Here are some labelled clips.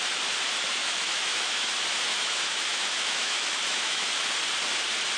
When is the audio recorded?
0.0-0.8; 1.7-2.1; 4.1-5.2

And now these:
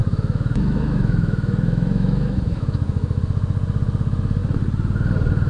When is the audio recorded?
3.2-5.5